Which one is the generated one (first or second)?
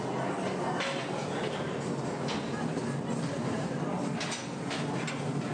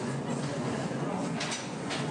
second